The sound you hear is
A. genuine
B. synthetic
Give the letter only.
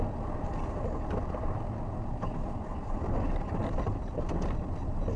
A